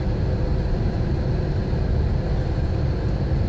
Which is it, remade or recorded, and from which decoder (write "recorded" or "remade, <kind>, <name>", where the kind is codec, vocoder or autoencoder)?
recorded